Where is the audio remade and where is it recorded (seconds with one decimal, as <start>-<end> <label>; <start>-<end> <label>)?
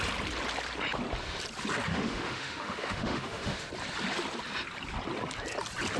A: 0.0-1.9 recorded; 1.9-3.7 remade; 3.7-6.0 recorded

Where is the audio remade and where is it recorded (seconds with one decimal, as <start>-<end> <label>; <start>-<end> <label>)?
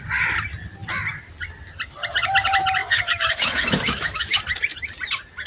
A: 0.0-2.8 recorded; 2.8-4.4 remade; 4.4-5.5 recorded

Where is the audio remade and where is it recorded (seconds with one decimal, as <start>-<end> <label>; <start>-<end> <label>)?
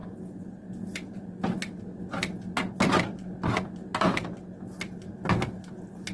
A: 0.0-6.1 recorded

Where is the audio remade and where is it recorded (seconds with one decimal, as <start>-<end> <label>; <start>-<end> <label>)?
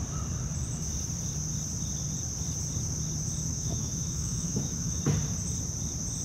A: 0.0-3.5 recorded; 3.5-5.0 remade; 5.0-6.2 recorded